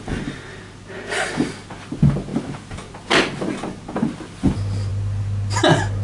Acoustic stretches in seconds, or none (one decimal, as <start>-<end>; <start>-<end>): 0.0-6.0